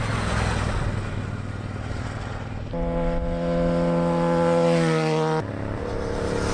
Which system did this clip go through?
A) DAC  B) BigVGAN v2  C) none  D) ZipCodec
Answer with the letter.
C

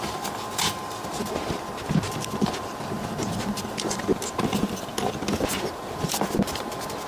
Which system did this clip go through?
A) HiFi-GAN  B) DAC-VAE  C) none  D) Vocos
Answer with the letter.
C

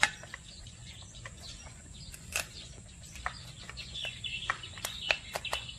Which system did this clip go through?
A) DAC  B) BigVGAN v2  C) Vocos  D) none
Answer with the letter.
C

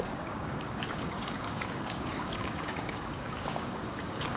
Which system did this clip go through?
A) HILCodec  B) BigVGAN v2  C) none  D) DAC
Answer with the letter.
D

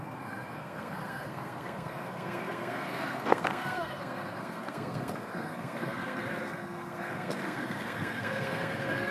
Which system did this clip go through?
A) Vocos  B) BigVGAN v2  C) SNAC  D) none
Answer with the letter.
C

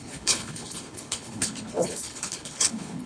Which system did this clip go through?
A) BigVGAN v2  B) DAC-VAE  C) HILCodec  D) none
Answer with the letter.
C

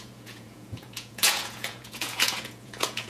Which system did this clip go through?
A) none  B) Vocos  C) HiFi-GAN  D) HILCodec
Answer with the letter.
B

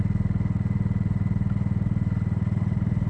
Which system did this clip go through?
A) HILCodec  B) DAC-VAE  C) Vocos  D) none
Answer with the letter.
D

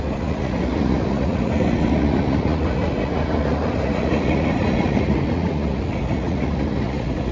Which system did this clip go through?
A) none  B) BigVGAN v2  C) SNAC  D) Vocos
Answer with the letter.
D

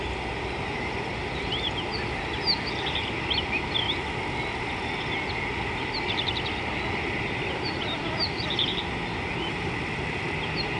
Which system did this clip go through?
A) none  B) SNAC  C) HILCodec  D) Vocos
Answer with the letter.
A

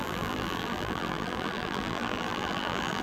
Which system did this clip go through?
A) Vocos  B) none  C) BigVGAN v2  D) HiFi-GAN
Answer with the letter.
C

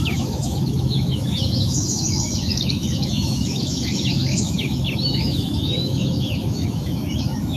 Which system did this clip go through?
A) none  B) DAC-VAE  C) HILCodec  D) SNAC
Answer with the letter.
B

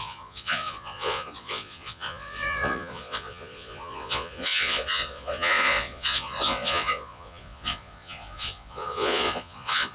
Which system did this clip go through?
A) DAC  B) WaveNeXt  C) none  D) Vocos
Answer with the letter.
D